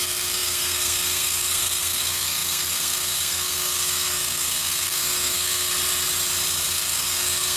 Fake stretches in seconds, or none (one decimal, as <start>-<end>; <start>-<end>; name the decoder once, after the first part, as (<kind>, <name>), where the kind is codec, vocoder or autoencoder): 0.0-5.7 (codec, SNAC); 6.7-7.6